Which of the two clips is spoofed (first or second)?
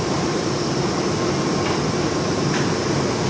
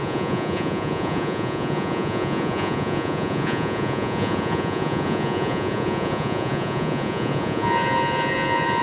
second